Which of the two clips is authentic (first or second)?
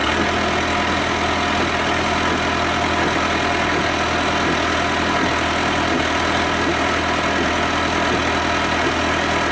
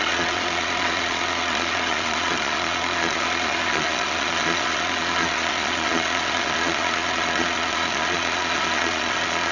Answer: first